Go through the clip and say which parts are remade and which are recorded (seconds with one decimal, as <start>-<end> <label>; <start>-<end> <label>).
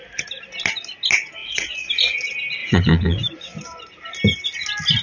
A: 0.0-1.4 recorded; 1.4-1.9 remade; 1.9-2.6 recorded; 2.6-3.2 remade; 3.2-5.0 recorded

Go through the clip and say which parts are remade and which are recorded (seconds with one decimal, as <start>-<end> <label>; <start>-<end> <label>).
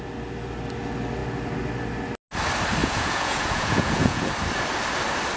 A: 0.0-2.8 recorded; 2.8-4.3 remade; 4.3-5.4 recorded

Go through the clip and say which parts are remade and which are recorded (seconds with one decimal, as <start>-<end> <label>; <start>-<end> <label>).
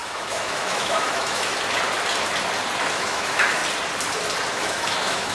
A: 0.0-1.5 remade; 1.5-2.9 recorded; 2.9-3.6 remade; 3.6-4.5 recorded; 4.5-5.3 remade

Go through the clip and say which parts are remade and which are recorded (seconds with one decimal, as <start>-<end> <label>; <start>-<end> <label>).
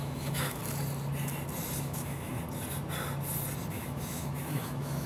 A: 0.0-0.6 remade; 0.6-1.8 recorded; 1.8-2.3 remade; 2.3-3.7 recorded; 3.7-5.1 remade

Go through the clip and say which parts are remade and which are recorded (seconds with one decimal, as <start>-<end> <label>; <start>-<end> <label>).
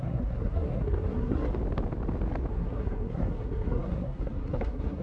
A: 0.0-1.5 remade; 1.5-2.5 recorded; 2.5-5.0 remade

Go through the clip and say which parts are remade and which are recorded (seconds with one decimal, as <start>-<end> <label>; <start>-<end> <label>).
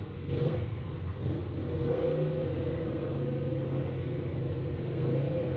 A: 0.0-5.6 remade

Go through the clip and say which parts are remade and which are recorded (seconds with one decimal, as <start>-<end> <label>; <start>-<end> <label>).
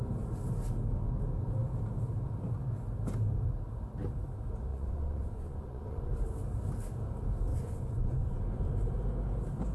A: 0.0-4.7 recorded; 4.7-6.1 remade; 6.1-7.5 recorded; 7.5-8.4 remade; 8.4-9.7 recorded